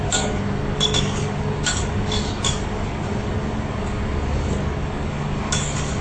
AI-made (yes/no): yes